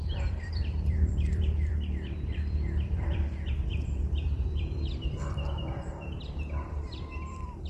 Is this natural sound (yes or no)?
no